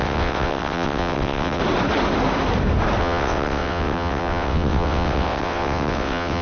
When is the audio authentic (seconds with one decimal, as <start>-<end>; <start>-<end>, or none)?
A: 1.6-3.0